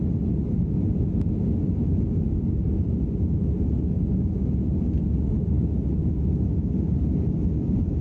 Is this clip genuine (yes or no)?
yes